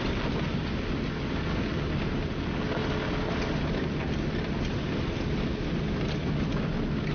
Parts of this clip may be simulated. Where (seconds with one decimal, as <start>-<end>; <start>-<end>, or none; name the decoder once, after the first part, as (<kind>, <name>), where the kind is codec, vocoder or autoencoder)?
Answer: none